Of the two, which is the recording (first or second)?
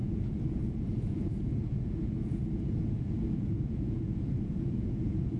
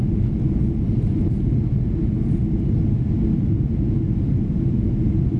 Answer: second